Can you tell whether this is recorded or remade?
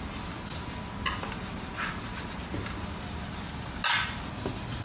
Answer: recorded